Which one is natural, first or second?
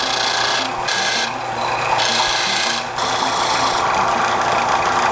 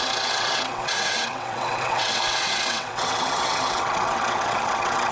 first